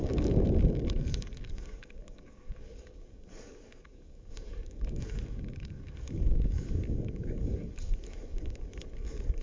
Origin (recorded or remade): remade